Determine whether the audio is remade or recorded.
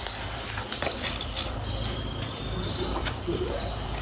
remade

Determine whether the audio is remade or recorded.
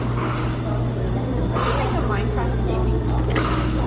recorded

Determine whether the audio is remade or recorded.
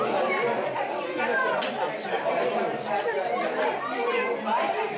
remade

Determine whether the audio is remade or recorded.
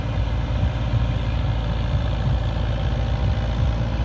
recorded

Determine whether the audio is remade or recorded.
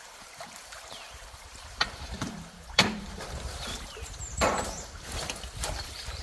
remade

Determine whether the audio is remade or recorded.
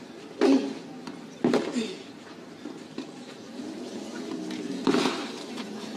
recorded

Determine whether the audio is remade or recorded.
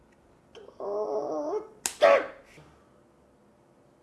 recorded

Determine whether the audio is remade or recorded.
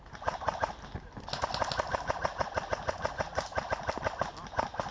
recorded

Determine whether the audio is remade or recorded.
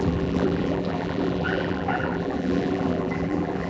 remade